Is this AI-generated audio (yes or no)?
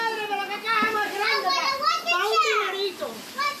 no